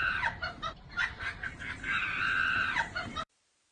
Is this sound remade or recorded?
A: remade